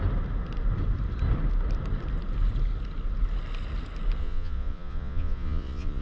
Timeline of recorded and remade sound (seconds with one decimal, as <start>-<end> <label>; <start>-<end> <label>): 0.0-4.2 recorded; 4.2-6.0 remade